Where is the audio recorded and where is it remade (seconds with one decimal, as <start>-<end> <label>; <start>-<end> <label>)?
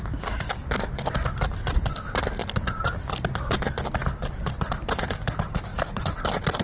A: 0.0-5.7 recorded; 5.7-6.6 remade